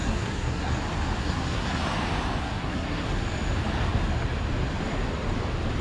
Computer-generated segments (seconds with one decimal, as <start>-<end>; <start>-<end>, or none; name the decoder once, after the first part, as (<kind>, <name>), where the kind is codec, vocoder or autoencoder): 0.0-0.7 (codec, SNAC); 1.2-1.8; 2.4-3.2